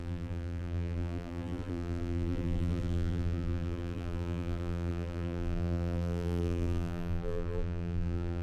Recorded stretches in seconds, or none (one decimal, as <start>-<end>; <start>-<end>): none